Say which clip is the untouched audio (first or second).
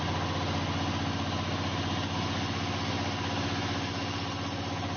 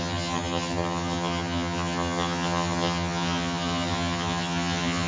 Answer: first